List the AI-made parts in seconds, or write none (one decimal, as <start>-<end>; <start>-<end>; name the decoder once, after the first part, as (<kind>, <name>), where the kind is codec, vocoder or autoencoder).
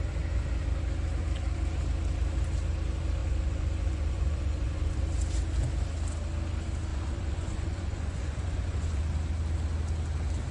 3.2-5.0 (vocoder, Vocos); 6.9-9.0